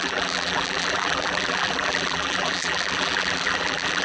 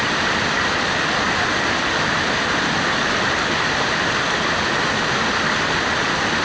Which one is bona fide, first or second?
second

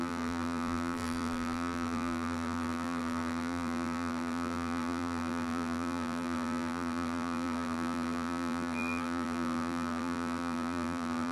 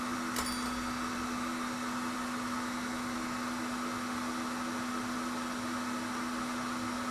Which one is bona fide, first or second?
second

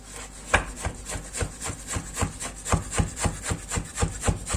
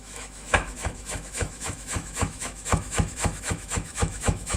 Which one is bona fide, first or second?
first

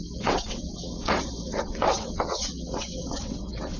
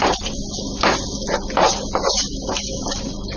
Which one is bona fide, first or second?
second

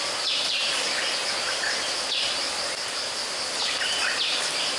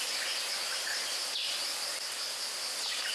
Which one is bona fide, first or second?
second